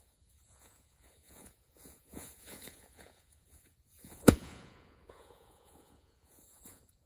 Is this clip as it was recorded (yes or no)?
no